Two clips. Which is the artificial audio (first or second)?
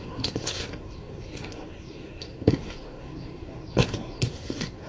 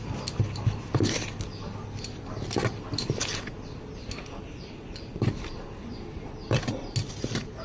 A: first